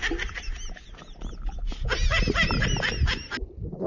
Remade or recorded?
recorded